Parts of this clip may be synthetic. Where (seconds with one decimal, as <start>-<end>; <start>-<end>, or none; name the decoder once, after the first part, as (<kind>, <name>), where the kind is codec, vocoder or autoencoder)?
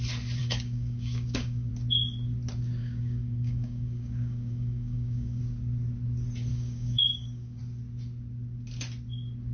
0.4-1.7 (codec, DAC); 2.8-5.4; 6.5-7.6